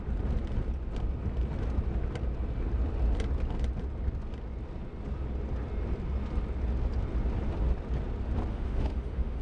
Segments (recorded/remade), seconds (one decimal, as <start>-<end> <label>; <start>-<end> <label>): 0.0-8.5 recorded; 8.5-9.4 remade